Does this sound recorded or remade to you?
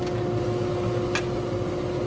recorded